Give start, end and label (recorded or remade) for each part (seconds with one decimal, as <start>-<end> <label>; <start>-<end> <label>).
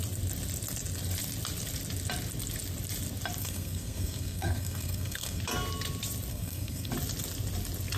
0.0-3.4 recorded; 3.4-5.4 remade; 5.4-6.3 recorded; 6.3-6.9 remade; 6.9-8.0 recorded